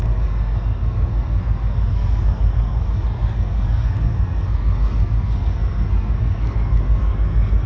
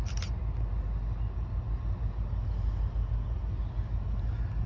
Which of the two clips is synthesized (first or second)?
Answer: first